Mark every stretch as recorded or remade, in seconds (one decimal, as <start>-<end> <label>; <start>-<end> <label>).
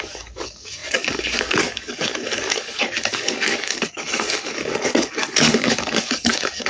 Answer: 0.0-6.7 remade